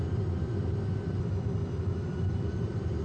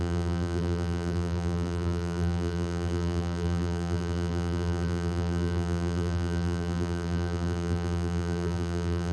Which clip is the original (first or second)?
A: first